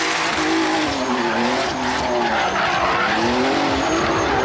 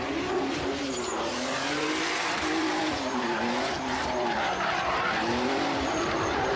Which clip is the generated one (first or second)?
second